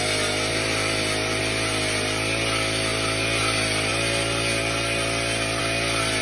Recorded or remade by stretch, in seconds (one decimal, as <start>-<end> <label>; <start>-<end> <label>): 0.0-0.5 recorded; 0.5-1.4 remade; 1.4-6.2 recorded